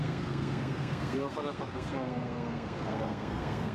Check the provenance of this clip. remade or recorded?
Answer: remade